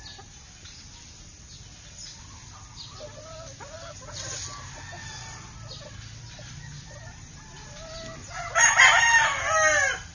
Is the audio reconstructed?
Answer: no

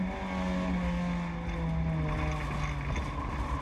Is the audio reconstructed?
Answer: no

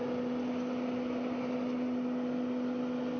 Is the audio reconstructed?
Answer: no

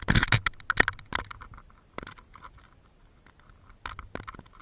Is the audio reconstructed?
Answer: no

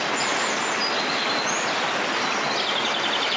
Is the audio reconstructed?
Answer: no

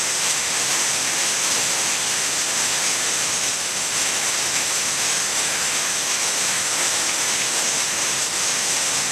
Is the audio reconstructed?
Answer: yes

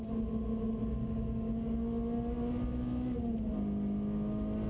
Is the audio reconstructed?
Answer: no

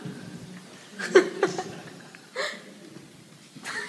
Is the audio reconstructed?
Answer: no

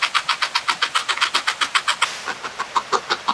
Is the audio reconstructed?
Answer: no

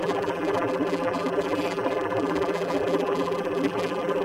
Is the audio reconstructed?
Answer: yes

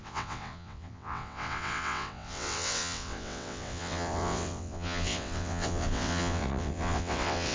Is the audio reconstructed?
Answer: yes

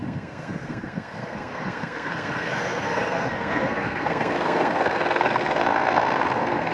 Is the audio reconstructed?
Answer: yes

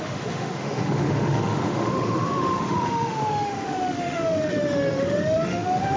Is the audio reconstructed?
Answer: yes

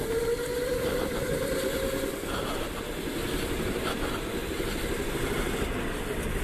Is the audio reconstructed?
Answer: no